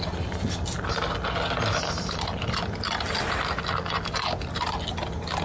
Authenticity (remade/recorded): recorded